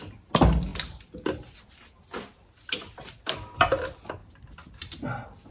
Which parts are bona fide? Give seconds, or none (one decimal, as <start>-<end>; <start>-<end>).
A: 0.0-4.2; 5.0-5.5